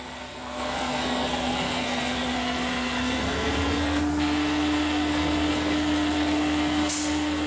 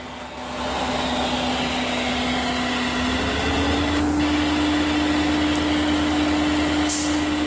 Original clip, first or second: second